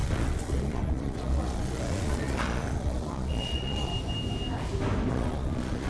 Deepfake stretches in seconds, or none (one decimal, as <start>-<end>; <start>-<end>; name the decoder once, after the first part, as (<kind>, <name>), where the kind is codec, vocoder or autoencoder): 0.0-3.9 (vocoder, Vocos); 5.1-5.9